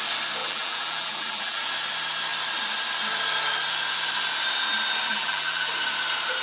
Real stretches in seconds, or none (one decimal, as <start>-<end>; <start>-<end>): 0.0-0.4; 1.6-5.1; 5.7-6.4